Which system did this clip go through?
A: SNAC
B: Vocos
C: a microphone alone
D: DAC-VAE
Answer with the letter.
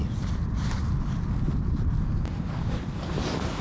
C